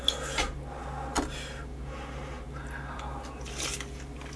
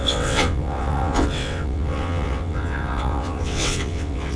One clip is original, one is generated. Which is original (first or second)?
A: first